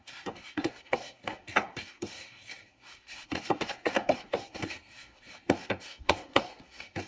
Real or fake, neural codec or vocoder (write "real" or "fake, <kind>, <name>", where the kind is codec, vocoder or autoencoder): fake, codec, SNAC